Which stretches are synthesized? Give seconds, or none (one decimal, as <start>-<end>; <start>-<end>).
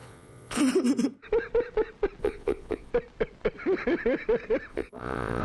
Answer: 0.0-0.6; 2.2-2.9; 4.7-5.4